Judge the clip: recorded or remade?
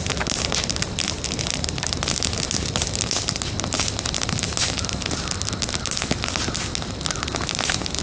recorded